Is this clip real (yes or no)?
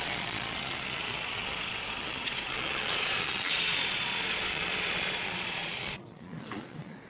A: no